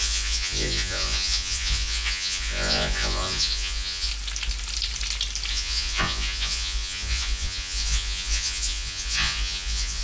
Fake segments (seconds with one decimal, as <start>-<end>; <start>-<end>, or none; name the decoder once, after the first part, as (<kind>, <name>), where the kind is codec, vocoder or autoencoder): 0.0-4.1 (vocoder, Vocos); 5.5-10.0